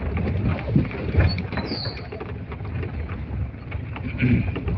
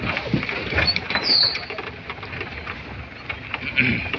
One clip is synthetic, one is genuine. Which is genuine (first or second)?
second